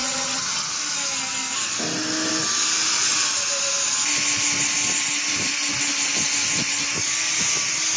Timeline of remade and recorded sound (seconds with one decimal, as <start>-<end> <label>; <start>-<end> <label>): 0.0-0.7 remade; 0.7-8.0 recorded